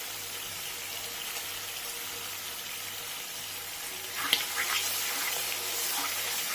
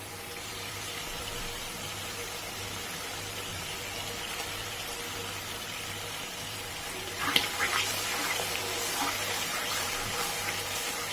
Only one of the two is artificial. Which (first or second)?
second